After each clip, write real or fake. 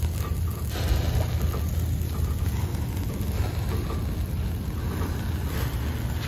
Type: real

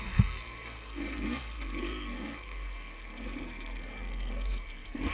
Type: fake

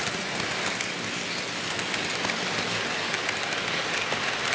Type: real